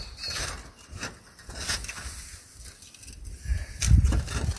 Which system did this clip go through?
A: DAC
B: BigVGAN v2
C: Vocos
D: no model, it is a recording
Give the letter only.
D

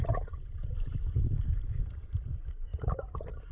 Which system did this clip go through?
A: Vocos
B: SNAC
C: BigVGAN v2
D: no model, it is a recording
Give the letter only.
C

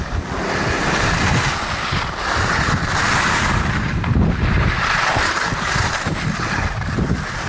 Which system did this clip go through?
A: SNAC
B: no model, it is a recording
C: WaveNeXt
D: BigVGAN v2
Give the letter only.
B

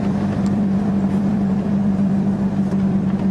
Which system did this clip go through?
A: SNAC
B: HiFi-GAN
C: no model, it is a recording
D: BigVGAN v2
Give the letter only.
D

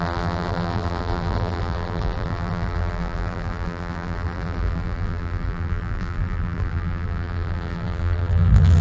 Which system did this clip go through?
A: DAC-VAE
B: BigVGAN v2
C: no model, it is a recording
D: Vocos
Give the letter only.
B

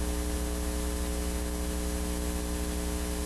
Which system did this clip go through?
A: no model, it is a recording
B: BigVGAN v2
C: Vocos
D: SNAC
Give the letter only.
A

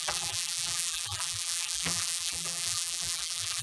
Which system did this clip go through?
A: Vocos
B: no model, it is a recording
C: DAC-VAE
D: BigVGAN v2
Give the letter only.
D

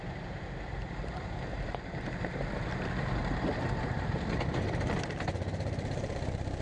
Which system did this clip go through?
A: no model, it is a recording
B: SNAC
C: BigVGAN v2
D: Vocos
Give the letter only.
C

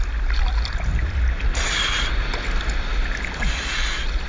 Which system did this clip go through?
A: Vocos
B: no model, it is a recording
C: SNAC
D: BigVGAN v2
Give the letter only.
B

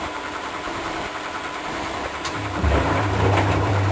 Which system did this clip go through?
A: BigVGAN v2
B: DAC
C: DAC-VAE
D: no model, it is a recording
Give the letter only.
A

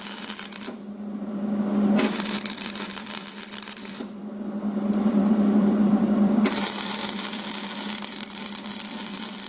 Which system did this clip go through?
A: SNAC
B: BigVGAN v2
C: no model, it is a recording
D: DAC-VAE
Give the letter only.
B